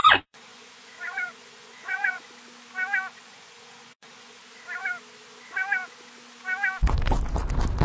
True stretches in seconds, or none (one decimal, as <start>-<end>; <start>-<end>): 2.3-3.1; 4.4-7.8